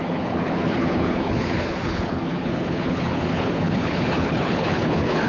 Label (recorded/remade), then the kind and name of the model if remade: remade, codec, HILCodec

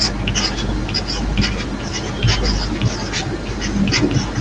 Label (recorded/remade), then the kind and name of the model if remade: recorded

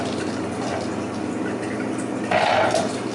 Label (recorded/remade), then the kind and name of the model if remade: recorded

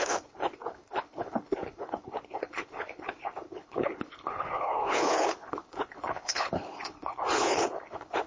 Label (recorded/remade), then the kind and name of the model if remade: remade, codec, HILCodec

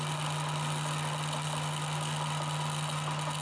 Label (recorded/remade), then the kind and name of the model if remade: recorded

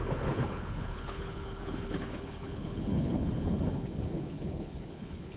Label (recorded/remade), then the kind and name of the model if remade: remade, codec, HILCodec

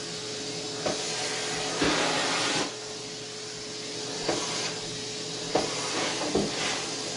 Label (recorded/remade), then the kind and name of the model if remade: recorded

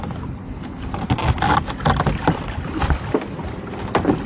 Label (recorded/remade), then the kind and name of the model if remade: recorded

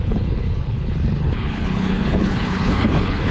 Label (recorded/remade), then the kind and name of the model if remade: remade, codec, HILCodec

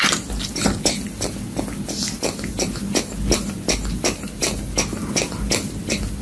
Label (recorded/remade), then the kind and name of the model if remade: recorded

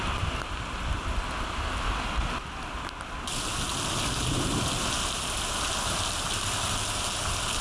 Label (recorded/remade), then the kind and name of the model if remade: recorded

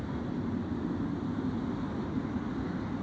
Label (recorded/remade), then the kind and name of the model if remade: recorded